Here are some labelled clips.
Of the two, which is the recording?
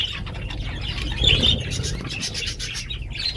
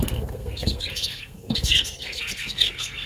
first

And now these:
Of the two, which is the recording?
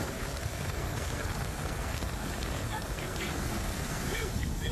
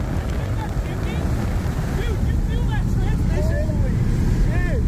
second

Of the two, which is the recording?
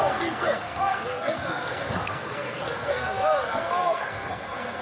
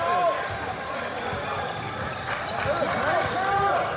second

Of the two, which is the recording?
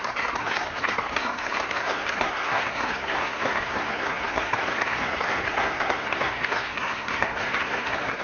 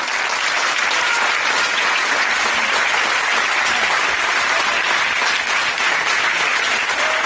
second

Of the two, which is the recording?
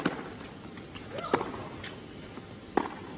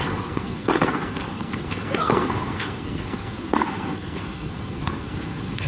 first